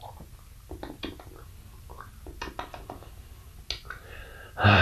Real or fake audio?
real